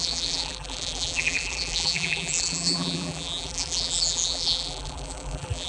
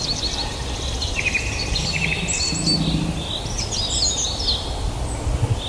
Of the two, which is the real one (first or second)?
second